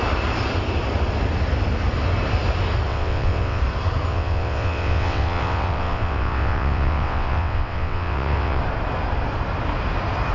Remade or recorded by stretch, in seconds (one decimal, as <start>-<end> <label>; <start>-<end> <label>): 0.0-2.9 recorded; 2.9-3.6 remade; 3.6-4.1 recorded; 4.1-8.6 remade; 8.6-10.3 recorded